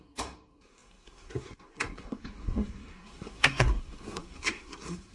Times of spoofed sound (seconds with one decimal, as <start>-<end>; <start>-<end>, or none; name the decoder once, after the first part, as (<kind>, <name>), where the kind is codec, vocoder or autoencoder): 0.0-5.1 (codec, SNAC)